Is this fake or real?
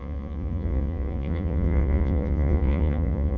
fake